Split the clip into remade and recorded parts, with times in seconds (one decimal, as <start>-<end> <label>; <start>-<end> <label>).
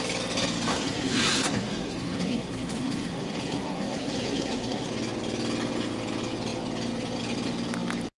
0.0-0.7 recorded; 0.7-4.9 remade; 4.9-8.2 recorded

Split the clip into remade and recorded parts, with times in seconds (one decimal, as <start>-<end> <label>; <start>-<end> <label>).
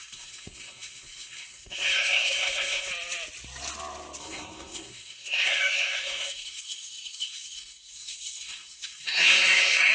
0.0-2.9 remade; 2.9-4.2 recorded; 4.2-9.9 remade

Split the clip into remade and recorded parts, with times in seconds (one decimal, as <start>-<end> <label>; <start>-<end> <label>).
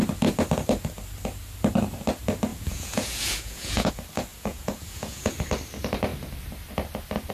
0.0-2.5 recorded; 2.5-3.9 remade; 3.9-4.3 recorded; 4.3-5.3 remade; 5.3-7.3 recorded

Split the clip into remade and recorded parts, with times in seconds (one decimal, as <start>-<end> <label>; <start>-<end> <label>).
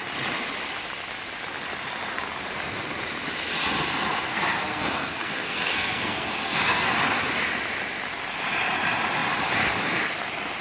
0.0-4.3 recorded; 4.3-6.9 remade; 6.9-10.6 recorded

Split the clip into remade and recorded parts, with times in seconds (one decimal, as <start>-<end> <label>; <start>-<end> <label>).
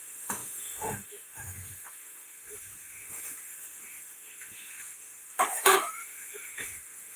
0.0-7.2 remade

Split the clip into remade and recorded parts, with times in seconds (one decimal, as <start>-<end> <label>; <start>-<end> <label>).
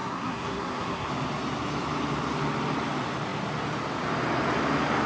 0.0-1.1 remade; 1.1-5.1 recorded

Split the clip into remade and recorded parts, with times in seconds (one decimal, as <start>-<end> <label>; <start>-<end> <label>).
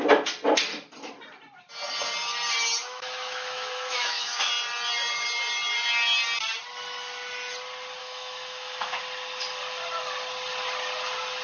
0.0-2.8 recorded; 2.8-4.5 remade; 4.5-8.0 recorded; 8.0-9.0 remade; 9.0-11.4 recorded